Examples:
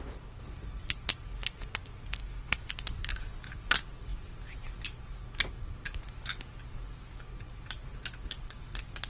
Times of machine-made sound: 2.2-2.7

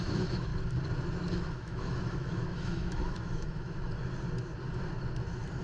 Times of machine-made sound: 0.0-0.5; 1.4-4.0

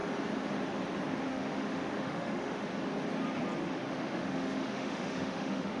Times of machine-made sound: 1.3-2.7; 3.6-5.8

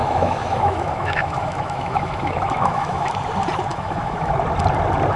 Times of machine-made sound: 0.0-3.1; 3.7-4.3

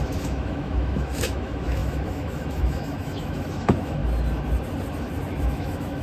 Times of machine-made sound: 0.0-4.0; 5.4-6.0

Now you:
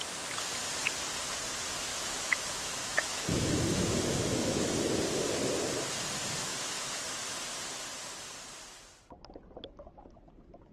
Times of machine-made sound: 1.9-5.0; 6.5-7.4